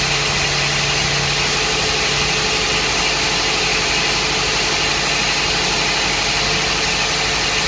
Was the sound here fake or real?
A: real